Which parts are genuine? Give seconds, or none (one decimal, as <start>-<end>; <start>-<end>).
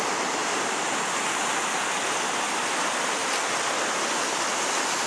0.0-0.4; 1.5-5.1